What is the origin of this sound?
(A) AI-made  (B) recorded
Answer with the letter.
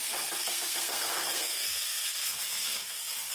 A